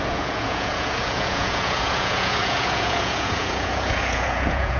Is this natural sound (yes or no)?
no